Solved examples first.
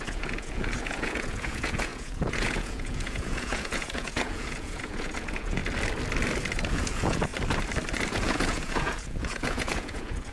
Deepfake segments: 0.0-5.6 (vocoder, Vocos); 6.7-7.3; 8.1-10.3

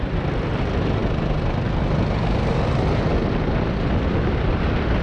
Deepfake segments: none

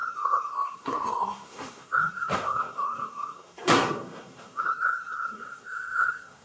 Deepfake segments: 0.0-6.4 (codec, SNAC)